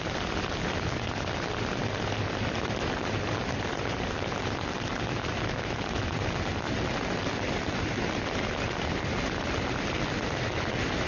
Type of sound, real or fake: real